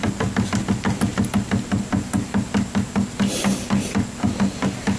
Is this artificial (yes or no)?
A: no